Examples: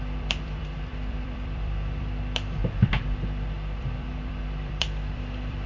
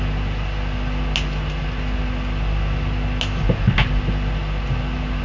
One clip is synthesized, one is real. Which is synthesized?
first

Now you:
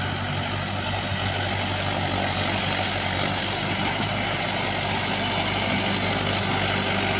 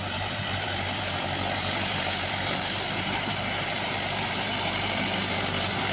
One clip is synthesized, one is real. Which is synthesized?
second